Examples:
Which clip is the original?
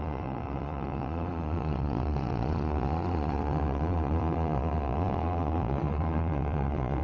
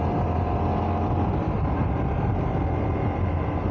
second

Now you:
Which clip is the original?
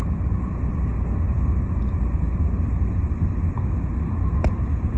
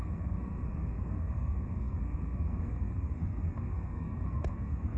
first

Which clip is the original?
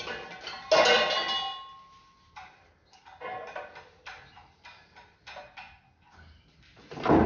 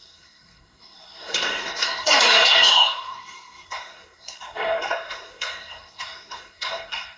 first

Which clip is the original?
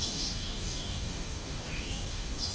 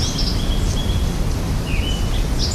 second